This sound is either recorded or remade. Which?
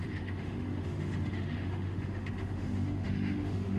remade